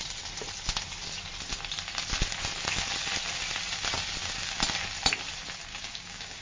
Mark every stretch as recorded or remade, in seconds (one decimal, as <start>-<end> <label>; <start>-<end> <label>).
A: 0.0-5.7 recorded; 5.7-6.4 remade